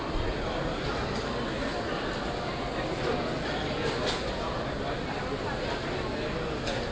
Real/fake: real